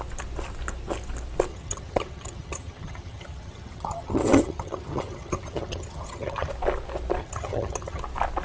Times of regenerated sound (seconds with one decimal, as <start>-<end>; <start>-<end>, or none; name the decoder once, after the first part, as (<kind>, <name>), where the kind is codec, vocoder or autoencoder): 1.5-6.5 (vocoder, HiFi-GAN); 7.2-8.0